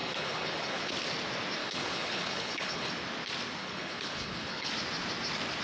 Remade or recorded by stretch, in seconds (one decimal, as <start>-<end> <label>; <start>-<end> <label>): 0.0-0.9 remade; 0.9-1.6 recorded; 1.6-2.9 remade; 2.9-3.6 recorded; 3.6-4.7 remade; 4.7-5.6 recorded